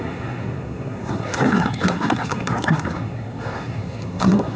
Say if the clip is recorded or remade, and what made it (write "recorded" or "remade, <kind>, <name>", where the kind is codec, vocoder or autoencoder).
remade, codec, SNAC